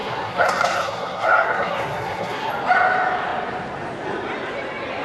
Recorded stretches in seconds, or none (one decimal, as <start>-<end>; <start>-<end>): 2.5-5.0